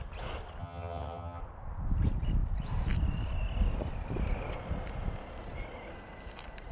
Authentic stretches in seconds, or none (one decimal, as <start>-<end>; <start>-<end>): 0.0-0.6; 1.4-6.7